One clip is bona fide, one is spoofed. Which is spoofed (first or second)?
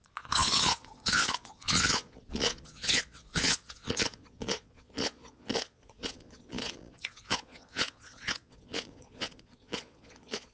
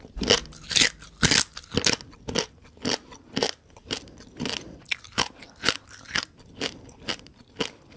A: first